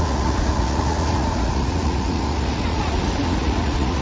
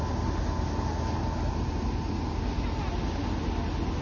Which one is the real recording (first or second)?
second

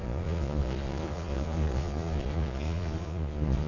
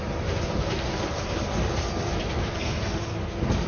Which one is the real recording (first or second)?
second